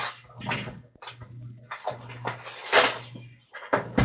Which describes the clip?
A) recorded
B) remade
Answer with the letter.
A